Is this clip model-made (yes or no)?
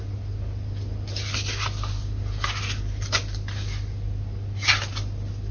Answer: no